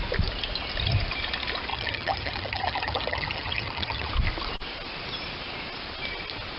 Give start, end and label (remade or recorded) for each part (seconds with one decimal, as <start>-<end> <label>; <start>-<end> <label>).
0.0-1.7 recorded; 1.7-4.1 remade; 4.1-6.6 recorded

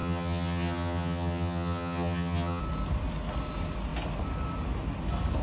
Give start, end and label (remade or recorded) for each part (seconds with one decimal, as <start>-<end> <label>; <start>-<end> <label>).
0.0-2.6 remade; 2.6-5.4 recorded

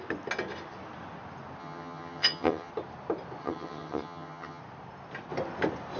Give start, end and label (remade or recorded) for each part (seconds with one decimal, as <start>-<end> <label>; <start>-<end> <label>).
0.0-1.6 recorded; 1.6-2.7 remade; 2.7-3.4 recorded; 3.4-4.6 remade; 4.6-6.0 recorded

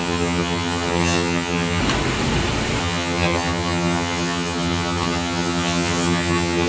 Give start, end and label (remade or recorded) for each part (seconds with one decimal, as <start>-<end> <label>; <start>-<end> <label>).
0.0-1.8 remade; 1.8-2.8 recorded; 2.8-6.7 remade

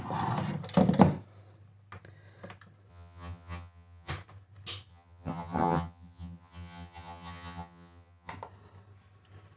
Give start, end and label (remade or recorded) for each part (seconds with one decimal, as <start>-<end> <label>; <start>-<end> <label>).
0.0-2.9 recorded; 2.9-4.1 remade; 4.1-4.9 recorded; 4.9-8.3 remade; 8.3-9.6 recorded